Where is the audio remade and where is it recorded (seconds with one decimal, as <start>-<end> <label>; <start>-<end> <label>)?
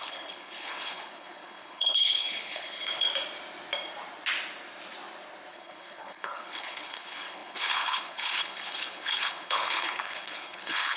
0.0-3.1 remade; 3.1-5.5 recorded; 5.5-11.0 remade